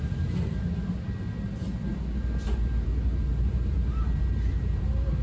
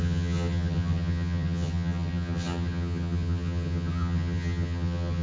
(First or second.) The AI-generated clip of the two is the second